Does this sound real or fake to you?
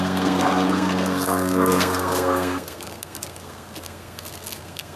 fake